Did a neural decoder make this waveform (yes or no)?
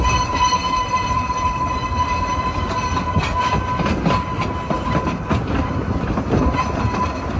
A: no